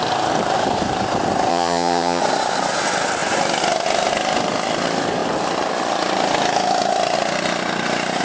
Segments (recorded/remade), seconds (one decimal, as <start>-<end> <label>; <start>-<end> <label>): 0.0-1.5 recorded; 1.5-2.2 remade; 2.2-8.2 recorded